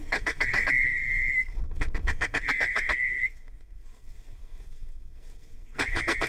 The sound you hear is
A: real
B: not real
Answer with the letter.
B